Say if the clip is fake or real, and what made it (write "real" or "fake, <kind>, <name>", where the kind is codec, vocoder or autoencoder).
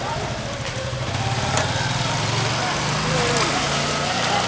real